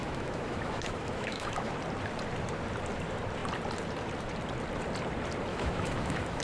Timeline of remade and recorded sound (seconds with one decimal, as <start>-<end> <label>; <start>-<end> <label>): 0.0-1.7 remade; 1.7-5.5 recorded; 5.5-6.4 remade